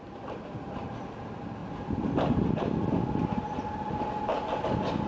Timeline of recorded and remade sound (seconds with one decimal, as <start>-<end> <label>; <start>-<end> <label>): 0.0-5.1 recorded